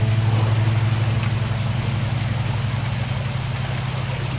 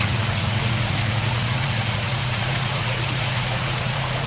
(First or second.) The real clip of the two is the first